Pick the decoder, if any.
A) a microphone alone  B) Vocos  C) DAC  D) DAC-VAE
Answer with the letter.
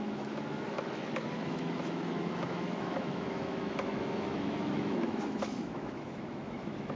D